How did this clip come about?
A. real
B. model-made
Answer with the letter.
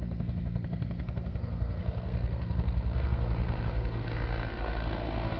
B